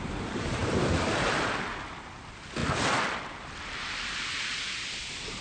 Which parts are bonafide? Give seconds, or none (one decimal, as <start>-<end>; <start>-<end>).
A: 0.0-5.4